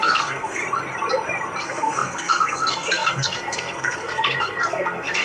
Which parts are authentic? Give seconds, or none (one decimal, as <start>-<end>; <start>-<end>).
0.6-1.6